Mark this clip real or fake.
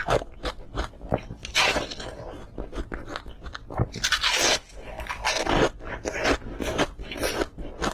real